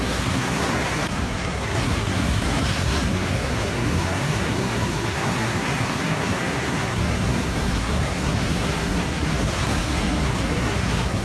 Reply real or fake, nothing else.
fake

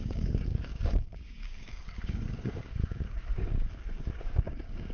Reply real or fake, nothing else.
fake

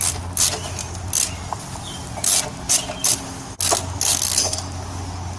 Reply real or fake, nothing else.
real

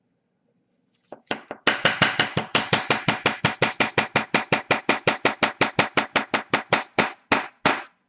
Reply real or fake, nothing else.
real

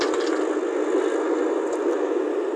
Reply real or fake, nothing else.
real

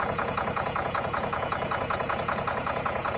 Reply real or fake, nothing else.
fake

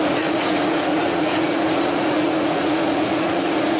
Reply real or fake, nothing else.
fake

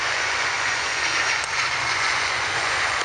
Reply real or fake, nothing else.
fake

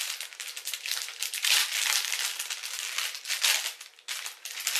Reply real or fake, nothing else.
real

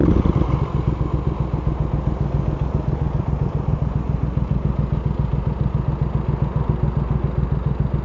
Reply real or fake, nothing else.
real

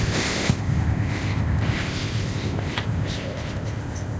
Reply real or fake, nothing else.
fake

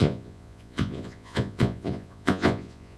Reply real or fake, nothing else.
fake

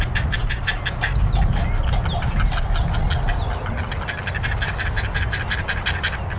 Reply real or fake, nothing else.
real